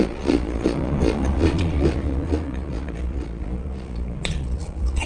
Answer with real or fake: fake